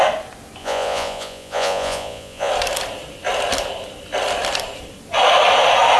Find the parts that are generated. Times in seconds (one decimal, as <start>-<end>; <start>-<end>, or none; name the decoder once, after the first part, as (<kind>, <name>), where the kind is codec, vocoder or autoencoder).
0.6-2.5 (vocoder, Vocos)